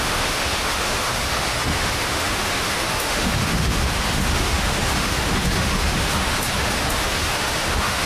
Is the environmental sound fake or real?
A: fake